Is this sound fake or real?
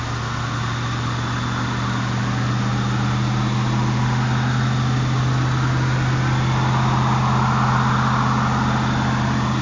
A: real